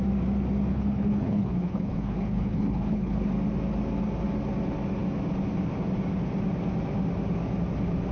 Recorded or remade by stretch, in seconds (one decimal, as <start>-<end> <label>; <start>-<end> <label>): 0.0-0.7 recorded; 0.7-3.3 remade; 3.3-8.1 recorded